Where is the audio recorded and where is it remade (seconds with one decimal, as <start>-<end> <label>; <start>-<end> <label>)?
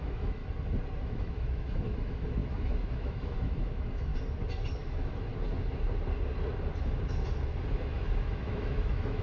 0.0-0.4 remade; 0.4-1.0 recorded; 1.0-4.1 remade; 4.1-4.7 recorded; 4.7-5.3 remade; 5.3-7.7 recorded; 7.7-9.2 remade